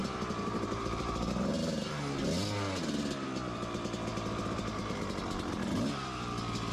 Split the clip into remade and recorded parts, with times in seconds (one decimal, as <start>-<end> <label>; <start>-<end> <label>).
0.0-1.9 remade; 1.9-4.1 recorded; 4.1-5.7 remade; 5.7-6.7 recorded

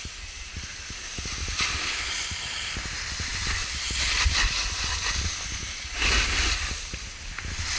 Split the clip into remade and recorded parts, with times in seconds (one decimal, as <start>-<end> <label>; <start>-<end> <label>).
0.0-7.8 recorded

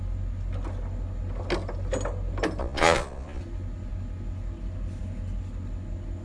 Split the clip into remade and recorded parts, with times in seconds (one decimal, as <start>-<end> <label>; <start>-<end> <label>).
0.0-2.6 recorded; 2.6-3.4 remade; 3.4-6.2 recorded

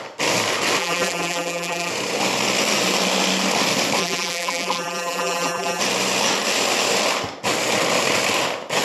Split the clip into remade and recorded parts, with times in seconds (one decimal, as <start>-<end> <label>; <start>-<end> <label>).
0.0-0.8 recorded; 0.8-1.9 remade; 1.9-4.0 recorded; 4.0-5.8 remade; 5.8-8.8 recorded

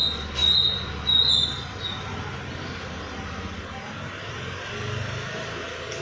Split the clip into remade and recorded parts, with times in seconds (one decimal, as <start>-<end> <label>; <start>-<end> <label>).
0.0-6.0 recorded

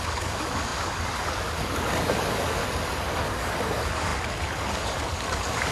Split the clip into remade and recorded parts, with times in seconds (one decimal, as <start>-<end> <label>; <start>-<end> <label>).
0.0-2.6 remade; 2.6-3.1 recorded; 3.1-5.7 remade

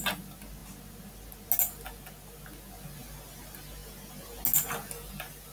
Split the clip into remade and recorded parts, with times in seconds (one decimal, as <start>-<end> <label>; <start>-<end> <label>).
0.0-5.5 recorded

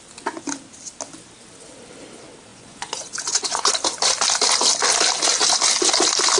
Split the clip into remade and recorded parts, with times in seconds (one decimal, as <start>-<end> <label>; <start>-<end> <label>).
0.0-2.5 recorded; 2.5-3.7 remade; 3.7-6.4 recorded